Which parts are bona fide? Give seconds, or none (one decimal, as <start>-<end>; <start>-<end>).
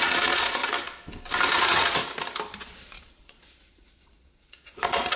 0.6-1.6; 2.0-2.6